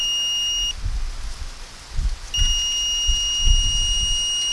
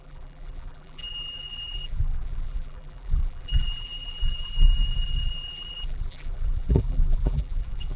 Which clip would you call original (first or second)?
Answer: first